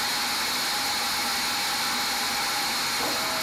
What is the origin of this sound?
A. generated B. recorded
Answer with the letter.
B